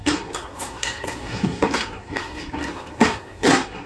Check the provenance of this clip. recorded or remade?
remade